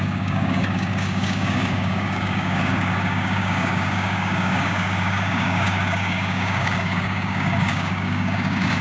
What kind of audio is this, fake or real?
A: fake